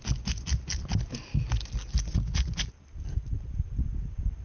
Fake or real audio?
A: real